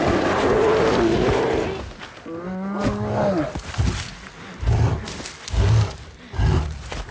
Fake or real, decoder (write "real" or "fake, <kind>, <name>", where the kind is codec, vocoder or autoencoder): real